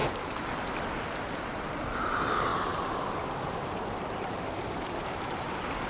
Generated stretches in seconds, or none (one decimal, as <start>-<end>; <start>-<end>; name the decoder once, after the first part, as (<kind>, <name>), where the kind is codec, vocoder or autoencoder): 0.0-0.5 (vocoder, BigVGAN v2); 2.5-5.9